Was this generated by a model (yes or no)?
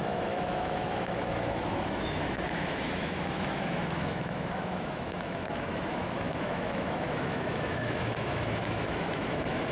yes